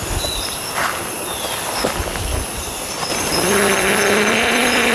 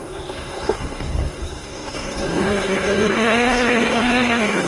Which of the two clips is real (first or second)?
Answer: first